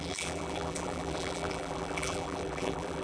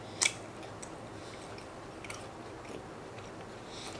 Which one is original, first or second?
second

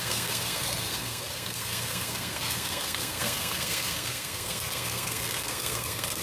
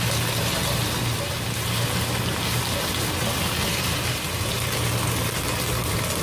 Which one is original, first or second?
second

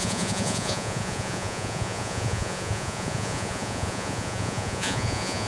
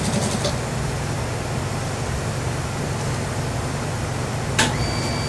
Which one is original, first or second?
second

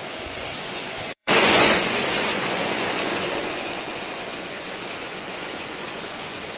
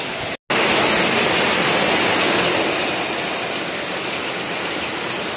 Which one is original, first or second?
second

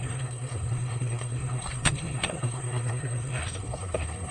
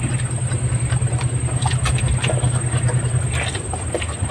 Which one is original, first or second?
second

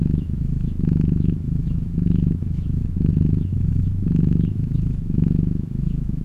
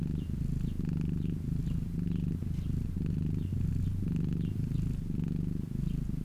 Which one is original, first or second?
second